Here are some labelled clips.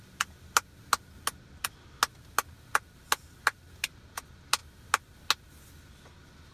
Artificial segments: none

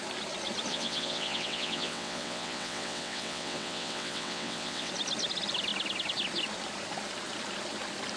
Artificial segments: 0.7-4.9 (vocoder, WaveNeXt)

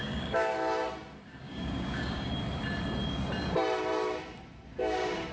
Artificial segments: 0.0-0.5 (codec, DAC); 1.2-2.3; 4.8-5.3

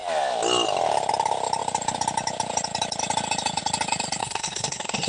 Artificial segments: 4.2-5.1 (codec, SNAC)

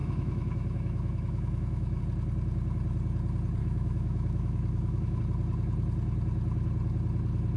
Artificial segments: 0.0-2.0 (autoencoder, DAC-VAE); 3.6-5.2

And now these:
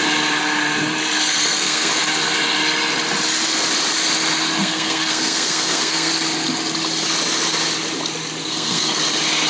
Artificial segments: 1.3-1.9 (codec, SNAC); 4.6-6.1; 8.4-9.0